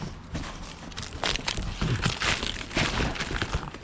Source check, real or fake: real